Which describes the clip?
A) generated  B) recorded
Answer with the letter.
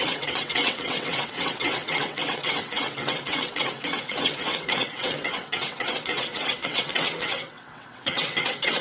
A